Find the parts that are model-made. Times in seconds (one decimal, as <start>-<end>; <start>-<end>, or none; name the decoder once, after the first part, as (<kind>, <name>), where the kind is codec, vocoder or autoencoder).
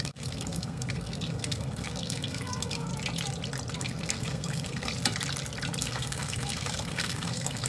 0.0-2.9 (codec, SNAC); 3.8-4.9; 5.8-7.7